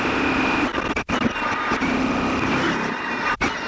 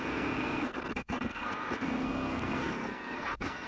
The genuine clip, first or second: first